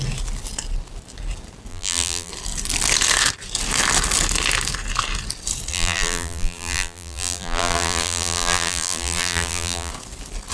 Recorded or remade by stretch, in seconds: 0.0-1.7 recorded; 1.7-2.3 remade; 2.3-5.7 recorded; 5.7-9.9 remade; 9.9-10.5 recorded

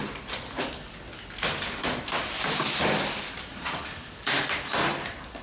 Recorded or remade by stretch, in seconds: 0.0-0.7 remade; 0.7-3.5 recorded; 3.5-4.4 remade; 4.4-5.4 recorded

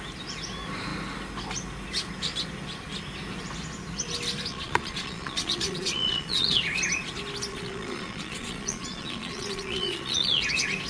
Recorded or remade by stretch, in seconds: 0.0-4.5 recorded; 4.5-6.6 remade; 6.6-7.5 recorded; 7.5-10.4 remade; 10.4-10.9 recorded